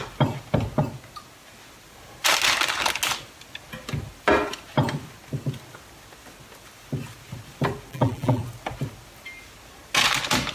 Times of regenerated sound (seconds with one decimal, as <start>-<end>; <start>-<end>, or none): 7.9-8.4